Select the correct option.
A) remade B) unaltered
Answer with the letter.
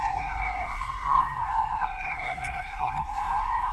A